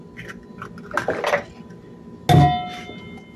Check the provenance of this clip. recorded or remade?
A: recorded